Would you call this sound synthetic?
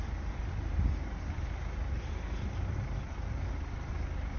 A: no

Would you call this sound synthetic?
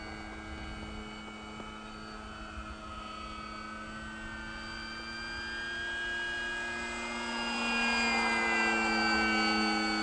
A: no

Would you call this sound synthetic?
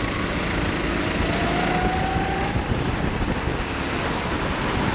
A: no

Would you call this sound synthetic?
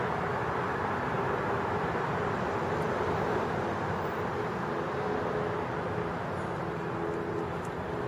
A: no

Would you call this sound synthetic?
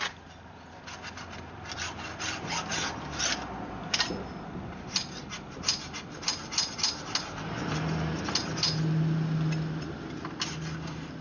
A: no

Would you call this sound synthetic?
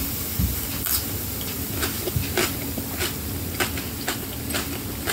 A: no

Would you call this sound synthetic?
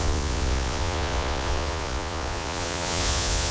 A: yes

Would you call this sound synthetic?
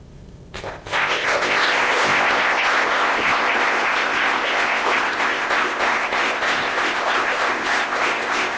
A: yes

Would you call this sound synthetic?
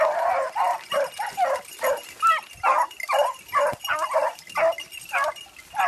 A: no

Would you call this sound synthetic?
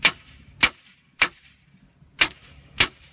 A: no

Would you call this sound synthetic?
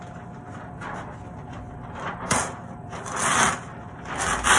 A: no